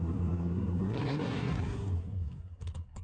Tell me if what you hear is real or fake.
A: fake